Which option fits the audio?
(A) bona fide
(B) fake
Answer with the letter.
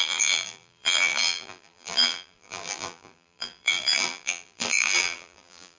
B